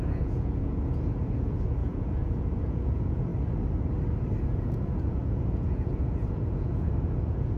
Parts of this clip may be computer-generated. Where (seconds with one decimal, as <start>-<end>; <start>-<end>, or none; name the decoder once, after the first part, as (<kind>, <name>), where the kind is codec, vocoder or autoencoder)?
0.0-3.3 (vocoder, Vocos); 4.4-7.6